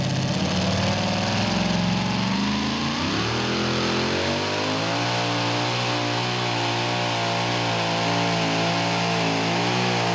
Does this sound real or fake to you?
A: real